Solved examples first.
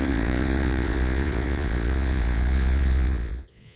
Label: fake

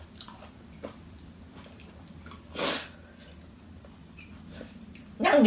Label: real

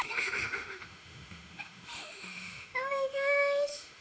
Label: fake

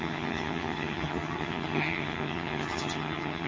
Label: fake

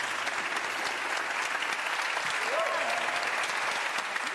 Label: real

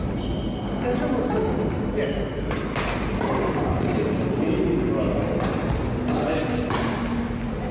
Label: real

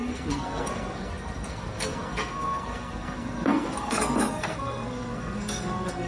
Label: fake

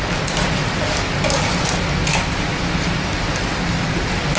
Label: real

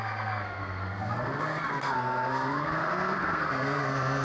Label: fake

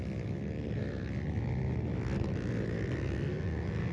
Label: real